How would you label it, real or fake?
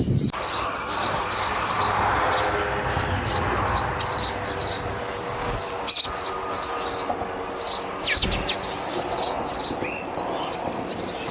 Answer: real